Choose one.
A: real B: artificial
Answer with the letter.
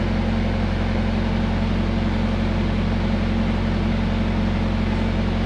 A